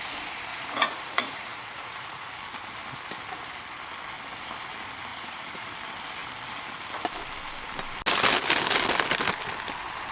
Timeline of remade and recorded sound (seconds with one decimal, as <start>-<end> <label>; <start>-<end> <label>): 0.0-0.5 recorded; 0.5-2.3 remade; 2.3-5.1 recorded; 5.1-5.7 remade; 5.7-10.1 recorded